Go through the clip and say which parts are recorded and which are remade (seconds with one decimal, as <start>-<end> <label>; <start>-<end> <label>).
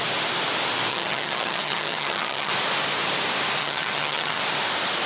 0.0-0.9 recorded; 0.9-2.5 remade; 2.5-3.6 recorded; 3.6-4.4 remade; 4.4-5.1 recorded